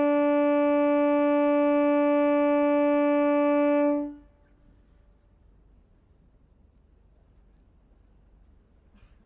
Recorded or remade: recorded